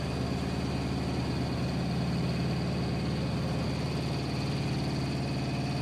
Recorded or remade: recorded